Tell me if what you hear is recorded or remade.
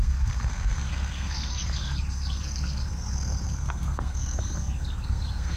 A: remade